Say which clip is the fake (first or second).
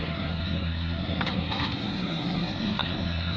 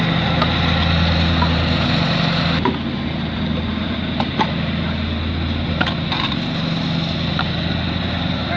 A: first